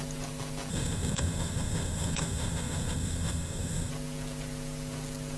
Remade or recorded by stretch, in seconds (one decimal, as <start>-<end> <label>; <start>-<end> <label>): 0.0-0.7 recorded; 0.7-3.9 remade; 3.9-5.4 recorded